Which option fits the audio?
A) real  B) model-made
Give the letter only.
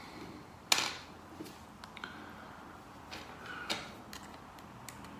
A